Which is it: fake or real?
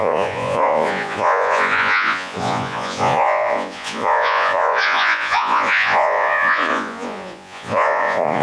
fake